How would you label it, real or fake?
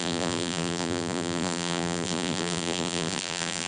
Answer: fake